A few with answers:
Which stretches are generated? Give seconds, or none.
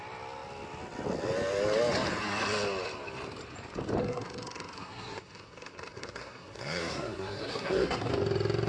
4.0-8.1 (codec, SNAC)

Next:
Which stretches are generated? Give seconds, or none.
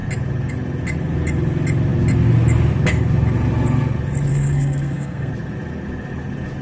4.3-5.3 (codec, SNAC)